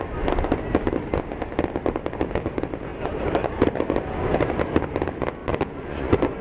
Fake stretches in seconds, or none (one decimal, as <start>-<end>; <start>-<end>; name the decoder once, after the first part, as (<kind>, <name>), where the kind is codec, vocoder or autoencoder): 5.4-6.4 (vocoder, Vocos)